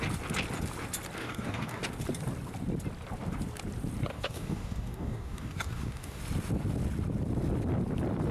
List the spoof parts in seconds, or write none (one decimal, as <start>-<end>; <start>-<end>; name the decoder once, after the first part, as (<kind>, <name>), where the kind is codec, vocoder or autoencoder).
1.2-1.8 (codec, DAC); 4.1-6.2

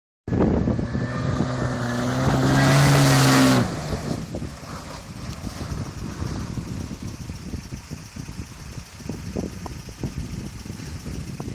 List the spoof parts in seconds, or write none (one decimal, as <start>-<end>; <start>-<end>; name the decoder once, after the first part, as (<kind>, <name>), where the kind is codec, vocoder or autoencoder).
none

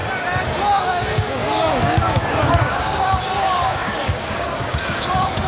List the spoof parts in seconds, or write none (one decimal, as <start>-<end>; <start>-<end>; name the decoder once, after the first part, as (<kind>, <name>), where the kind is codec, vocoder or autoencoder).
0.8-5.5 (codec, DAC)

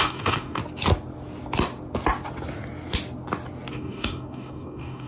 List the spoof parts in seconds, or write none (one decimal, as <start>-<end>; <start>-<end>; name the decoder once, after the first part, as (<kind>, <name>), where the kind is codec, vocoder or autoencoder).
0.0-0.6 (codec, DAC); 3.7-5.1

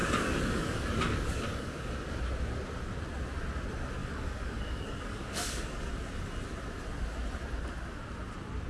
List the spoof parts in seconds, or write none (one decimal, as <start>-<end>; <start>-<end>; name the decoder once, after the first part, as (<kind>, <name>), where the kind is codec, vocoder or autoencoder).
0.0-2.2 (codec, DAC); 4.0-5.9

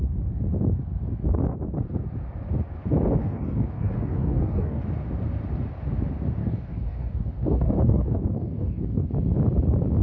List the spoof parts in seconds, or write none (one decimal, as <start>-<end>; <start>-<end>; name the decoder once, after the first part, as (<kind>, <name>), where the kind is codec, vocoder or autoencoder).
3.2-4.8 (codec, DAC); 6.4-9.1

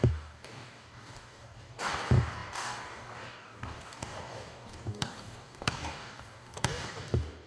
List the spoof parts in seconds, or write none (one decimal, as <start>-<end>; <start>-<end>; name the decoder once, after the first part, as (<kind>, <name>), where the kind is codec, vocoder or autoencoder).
0.0-7.5 (codec, DAC)